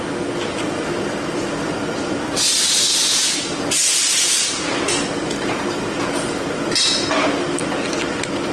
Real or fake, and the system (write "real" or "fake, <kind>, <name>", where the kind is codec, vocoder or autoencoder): real